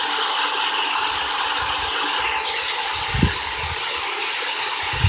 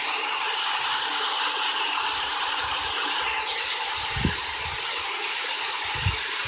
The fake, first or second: second